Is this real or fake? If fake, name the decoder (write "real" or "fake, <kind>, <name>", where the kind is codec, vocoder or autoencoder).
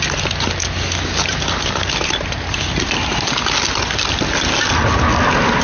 real